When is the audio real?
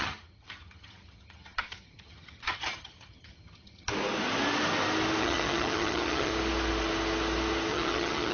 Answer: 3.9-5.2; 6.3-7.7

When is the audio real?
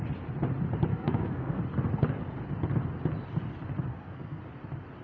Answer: 0.0-0.9; 1.6-3.9; 4.4-5.0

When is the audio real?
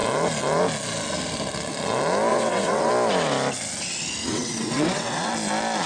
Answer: 0.0-2.3; 2.9-4.2; 5.3-5.9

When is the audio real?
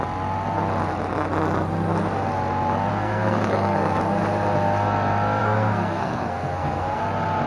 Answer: 0.0-2.9; 4.0-5.4; 7.0-7.5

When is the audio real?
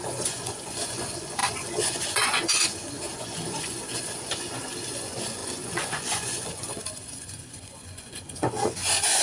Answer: none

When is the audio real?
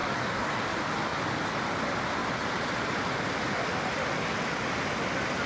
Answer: 0.6-5.5